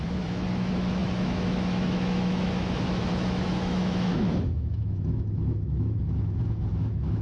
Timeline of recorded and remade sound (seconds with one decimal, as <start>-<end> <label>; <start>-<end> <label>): 0.0-7.2 remade